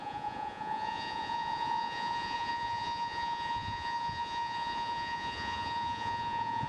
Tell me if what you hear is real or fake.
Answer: fake